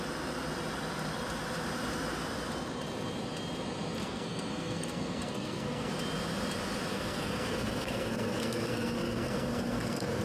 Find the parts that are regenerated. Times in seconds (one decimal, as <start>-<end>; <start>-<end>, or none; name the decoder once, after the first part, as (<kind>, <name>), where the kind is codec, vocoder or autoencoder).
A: 4.0-5.9 (codec, SNAC); 6.9-10.2